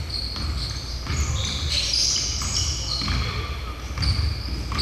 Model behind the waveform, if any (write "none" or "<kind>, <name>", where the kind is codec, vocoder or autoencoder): none